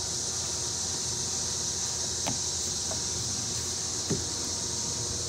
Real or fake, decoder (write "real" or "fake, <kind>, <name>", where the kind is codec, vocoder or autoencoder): real